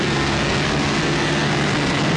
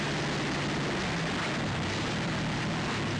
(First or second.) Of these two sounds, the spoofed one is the first